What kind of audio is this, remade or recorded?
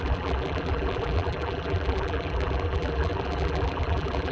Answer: remade